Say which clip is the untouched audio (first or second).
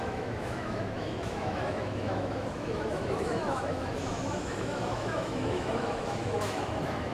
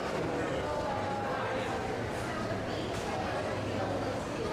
second